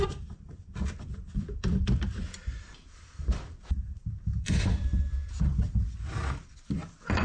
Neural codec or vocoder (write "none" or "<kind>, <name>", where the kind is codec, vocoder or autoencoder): vocoder, BigVGAN v2